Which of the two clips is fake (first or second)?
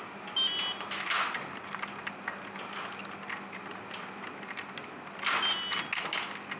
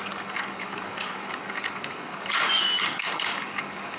second